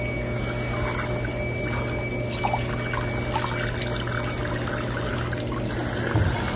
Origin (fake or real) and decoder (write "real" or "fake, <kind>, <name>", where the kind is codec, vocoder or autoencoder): real